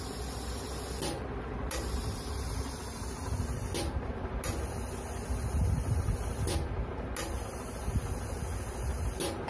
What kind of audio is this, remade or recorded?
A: recorded